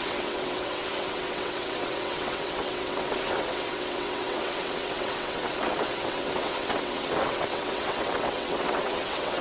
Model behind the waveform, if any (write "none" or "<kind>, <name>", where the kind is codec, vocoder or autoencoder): vocoder, WaveNeXt